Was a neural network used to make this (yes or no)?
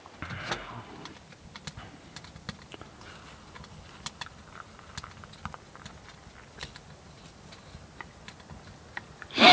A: no